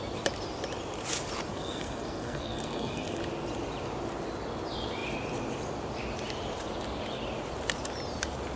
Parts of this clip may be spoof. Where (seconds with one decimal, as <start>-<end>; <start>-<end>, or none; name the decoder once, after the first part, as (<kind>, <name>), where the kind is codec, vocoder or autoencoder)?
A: 1.5-3.2 (codec, SNAC)